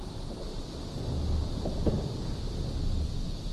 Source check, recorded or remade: recorded